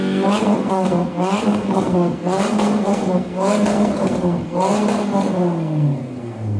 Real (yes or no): no